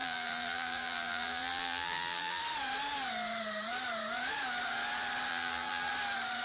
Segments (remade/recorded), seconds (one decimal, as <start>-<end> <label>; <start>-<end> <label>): 0.0-2.4 remade; 2.4-5.3 recorded; 5.3-5.9 remade; 5.9-6.4 recorded